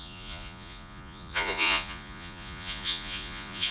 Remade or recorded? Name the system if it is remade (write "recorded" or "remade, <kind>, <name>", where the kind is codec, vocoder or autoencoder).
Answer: remade, vocoder, Vocos